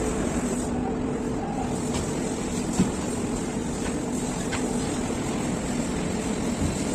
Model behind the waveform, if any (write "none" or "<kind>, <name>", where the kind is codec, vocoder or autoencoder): vocoder, BigVGAN v2